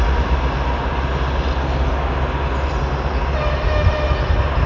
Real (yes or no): yes